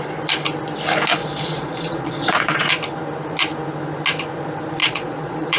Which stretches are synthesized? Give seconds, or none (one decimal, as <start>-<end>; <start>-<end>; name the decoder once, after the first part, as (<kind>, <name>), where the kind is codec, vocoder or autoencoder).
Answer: 1.2-2.7 (vocoder, Vocos); 4.8-5.6